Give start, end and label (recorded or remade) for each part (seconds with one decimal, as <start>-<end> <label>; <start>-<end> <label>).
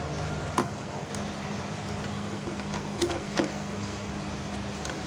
0.0-0.6 recorded; 0.6-1.1 remade; 1.1-2.1 recorded; 2.1-4.1 remade; 4.1-5.1 recorded